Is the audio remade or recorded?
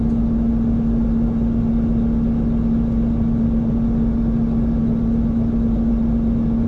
recorded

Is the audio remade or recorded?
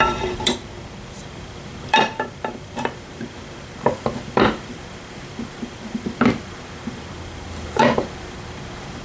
remade